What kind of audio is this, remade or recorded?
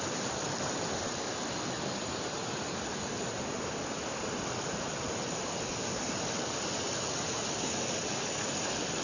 recorded